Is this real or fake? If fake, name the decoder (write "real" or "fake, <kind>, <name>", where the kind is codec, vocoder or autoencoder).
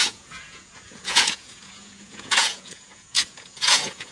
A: fake, vocoder, Vocos